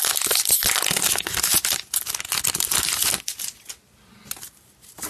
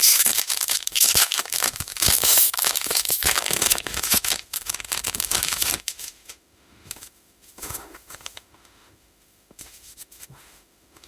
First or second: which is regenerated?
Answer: second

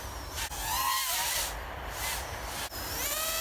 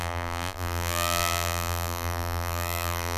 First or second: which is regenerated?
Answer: second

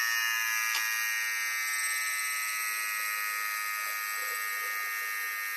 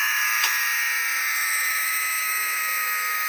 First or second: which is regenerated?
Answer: second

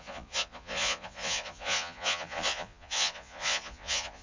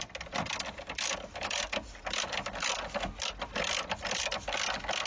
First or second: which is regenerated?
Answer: first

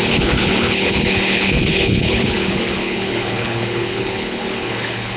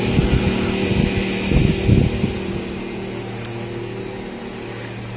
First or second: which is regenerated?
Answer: first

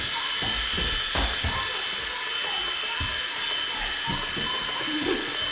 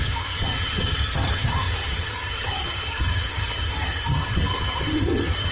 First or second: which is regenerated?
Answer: second